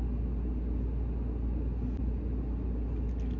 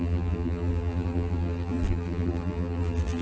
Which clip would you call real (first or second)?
first